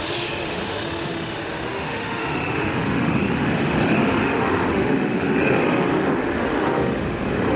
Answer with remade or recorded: remade